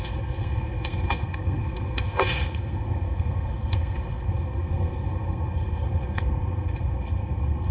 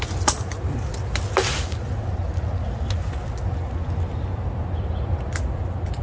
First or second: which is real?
second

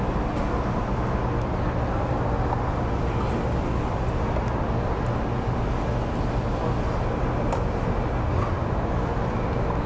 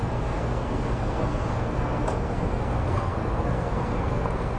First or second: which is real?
first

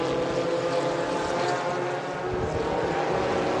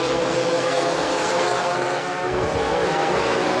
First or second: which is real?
first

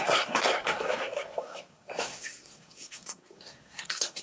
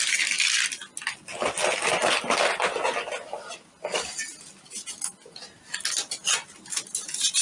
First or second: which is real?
second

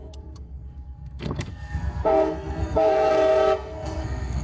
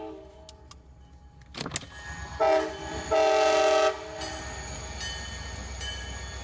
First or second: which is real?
second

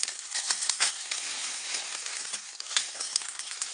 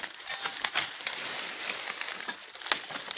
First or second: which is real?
second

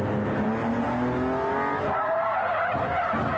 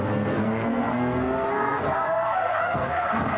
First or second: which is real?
first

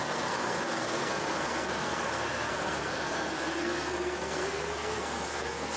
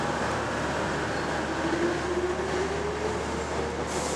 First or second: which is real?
second